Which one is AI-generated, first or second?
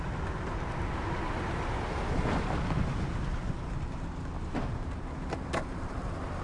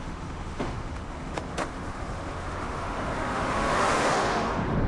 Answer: second